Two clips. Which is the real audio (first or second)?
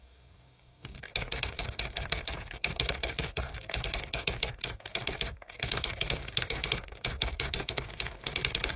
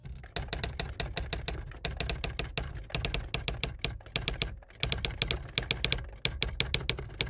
second